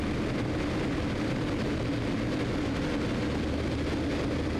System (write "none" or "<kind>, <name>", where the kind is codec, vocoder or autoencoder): none